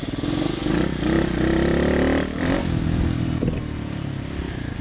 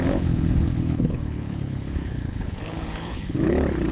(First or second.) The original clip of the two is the first